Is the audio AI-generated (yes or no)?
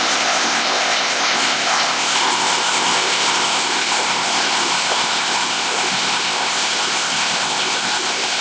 yes